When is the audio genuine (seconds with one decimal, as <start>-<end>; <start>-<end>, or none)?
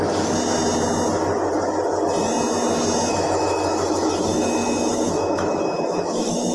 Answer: 0.0-3.1